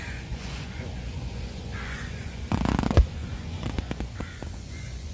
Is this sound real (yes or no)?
no